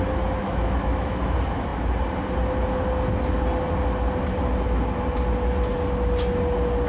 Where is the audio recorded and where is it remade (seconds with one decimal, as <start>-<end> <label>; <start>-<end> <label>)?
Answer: 0.0-0.4 recorded; 0.4-1.2 remade; 1.2-6.9 recorded